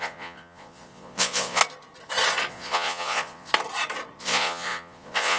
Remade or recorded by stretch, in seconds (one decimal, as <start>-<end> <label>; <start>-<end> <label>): 0.0-1.6 remade; 1.6-2.5 recorded; 2.5-3.5 remade; 3.5-4.2 recorded; 4.2-5.4 remade